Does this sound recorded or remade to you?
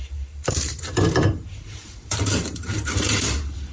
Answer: remade